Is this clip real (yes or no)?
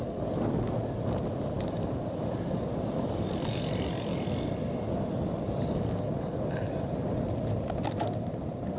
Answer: yes